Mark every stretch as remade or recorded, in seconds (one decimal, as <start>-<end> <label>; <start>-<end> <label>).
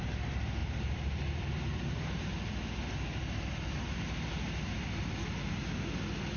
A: 0.0-0.6 recorded; 0.6-1.5 remade; 1.5-6.4 recorded